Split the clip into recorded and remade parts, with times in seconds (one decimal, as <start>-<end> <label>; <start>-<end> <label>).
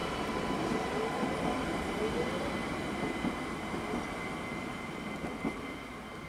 0.0-0.5 remade; 0.5-2.6 recorded; 2.6-3.8 remade; 3.8-6.3 recorded